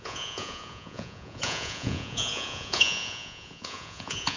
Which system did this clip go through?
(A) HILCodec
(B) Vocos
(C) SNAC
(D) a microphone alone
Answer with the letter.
B